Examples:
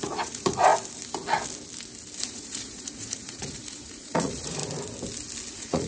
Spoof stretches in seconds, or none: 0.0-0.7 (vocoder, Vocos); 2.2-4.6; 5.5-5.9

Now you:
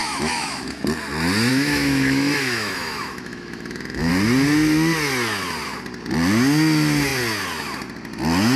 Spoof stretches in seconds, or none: 0.0-0.8 (autoencoder, DAC-VAE); 1.5-4.1